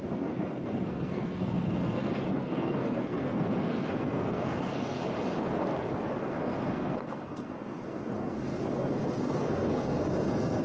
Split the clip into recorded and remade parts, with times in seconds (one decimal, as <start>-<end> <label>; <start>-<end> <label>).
0.0-5.0 remade; 5.0-6.2 recorded; 6.2-10.6 remade